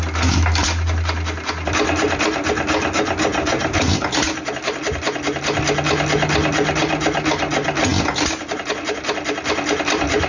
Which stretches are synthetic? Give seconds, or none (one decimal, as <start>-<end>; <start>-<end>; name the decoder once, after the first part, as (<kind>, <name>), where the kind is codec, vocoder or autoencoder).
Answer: none